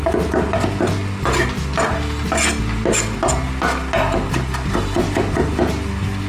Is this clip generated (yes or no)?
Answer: no